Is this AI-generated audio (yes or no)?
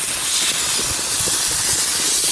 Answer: no